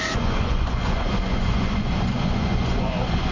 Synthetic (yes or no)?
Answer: yes